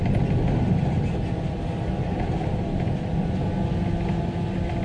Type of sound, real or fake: real